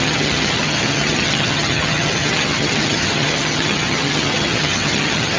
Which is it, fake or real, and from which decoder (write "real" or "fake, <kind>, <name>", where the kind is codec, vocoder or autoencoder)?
fake, vocoder, HiFi-GAN